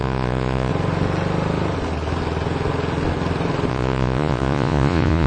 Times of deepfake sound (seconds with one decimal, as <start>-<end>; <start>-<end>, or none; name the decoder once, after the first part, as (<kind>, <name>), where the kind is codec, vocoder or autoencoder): 0.0-0.7 (vocoder, Vocos); 3.7-5.3